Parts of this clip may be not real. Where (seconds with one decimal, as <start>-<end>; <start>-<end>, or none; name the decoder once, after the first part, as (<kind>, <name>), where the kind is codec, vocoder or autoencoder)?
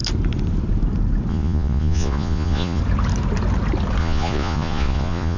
1.3-2.8 (vocoder, Vocos); 4.0-5.4